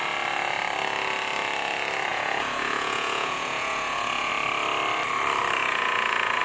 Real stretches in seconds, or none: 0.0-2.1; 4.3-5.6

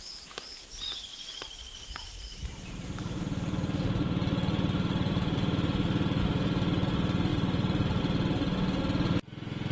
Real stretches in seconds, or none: 0.0-1.1; 6.2-7.3; 8.0-9.7

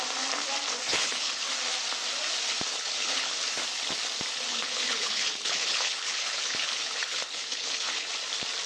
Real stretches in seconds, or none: 0.0-0.9; 1.5-2.7; 3.3-4.5; 8.1-8.7

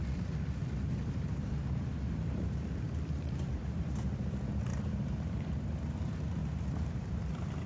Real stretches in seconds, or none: 0.0-0.6; 3.8-4.7; 5.5-6.4; 7.2-7.7

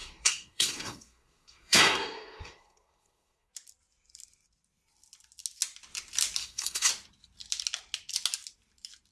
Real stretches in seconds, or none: 3.5-6.4; 6.9-9.1

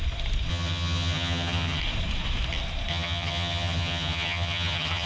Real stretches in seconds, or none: 0.0-0.5; 1.8-2.9